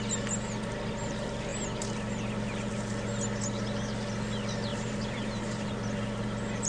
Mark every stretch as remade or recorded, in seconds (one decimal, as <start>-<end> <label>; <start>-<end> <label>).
0.0-4.7 recorded; 4.7-5.7 remade; 5.7-6.7 recorded